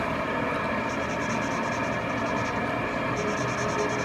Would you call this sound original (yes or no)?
yes